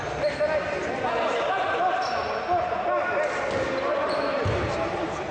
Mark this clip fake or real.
real